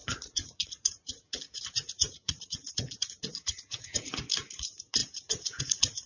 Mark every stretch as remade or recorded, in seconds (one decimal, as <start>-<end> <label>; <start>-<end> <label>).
0.0-6.1 remade